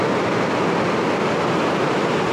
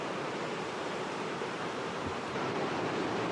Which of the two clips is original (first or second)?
first